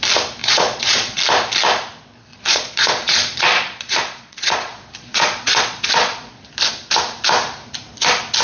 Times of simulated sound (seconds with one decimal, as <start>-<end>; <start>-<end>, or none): 0.4-1.2; 2.3-6.5